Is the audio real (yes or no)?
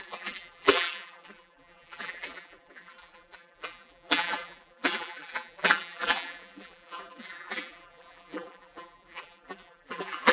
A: no